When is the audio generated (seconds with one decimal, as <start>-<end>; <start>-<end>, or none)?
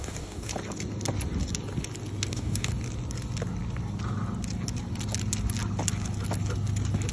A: 0.0-0.5; 2.3-2.7